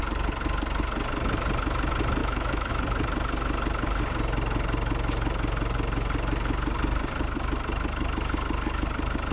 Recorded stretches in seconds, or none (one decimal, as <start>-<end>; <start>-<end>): 0.0-2.2; 2.7-9.3